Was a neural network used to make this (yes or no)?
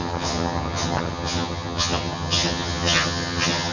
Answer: yes